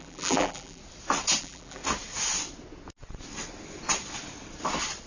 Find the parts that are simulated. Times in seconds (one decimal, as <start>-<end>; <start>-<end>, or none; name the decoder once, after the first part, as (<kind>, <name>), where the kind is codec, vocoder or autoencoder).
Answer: 0.0-0.8 (vocoder, BigVGAN v2); 1.4-1.8